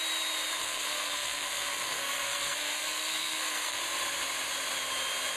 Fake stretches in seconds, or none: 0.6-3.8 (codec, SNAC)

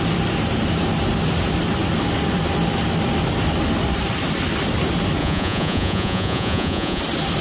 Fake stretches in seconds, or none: 5.2-7.0 (vocoder, Vocos)